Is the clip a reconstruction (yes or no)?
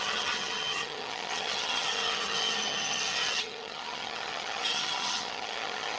yes